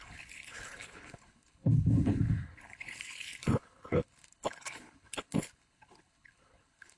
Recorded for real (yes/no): no